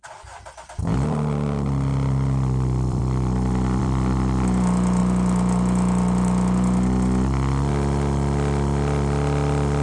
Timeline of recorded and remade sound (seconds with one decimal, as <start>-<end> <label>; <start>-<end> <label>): 0.0-3.0 remade; 3.0-3.8 recorded; 3.8-5.0 remade; 5.0-7.7 recorded; 7.7-9.8 remade